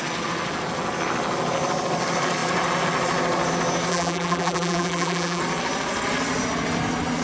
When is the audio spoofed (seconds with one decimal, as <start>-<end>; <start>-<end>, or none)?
3.9-5.4